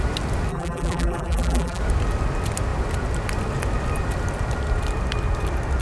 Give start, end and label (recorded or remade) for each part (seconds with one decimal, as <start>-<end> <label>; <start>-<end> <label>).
0.0-0.5 recorded; 0.5-1.8 remade; 1.8-5.8 recorded